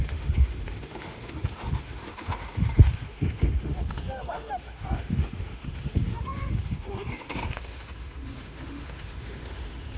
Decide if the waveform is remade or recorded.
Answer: remade